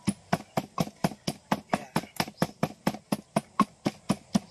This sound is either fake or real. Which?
real